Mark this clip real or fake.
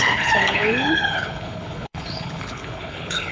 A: fake